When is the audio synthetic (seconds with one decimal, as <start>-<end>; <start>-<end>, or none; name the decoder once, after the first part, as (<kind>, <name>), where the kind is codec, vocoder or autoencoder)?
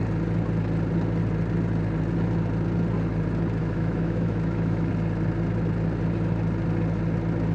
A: 3.6-4.9 (autoencoder, DAC-VAE)